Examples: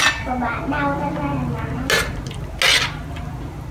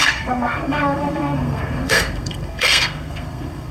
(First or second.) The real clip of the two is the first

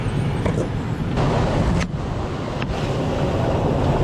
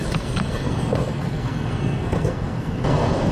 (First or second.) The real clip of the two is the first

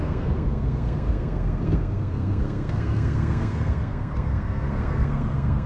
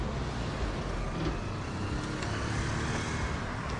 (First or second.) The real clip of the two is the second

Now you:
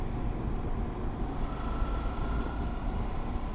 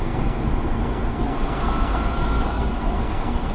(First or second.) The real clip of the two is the first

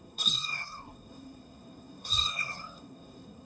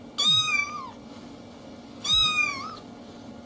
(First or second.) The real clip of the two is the second